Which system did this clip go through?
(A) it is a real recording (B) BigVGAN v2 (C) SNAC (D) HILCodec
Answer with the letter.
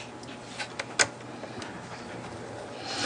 A